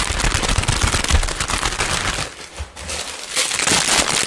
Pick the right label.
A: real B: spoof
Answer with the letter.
A